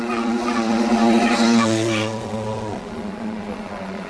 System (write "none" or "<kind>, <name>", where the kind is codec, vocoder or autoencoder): vocoder, Vocos